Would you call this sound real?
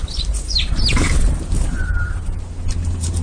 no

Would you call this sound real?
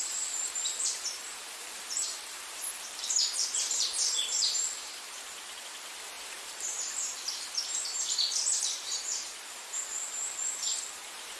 no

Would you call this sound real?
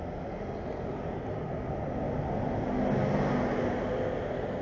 yes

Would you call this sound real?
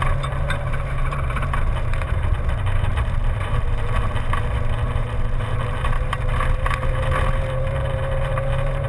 no